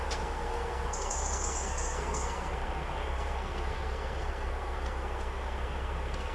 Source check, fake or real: fake